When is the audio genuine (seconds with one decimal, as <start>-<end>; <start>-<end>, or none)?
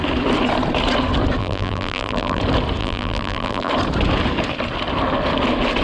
0.0-1.4; 2.4-2.8; 3.7-5.8